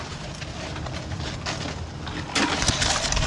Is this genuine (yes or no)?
yes